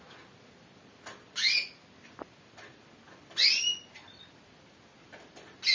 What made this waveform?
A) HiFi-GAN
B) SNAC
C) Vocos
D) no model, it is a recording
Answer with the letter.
D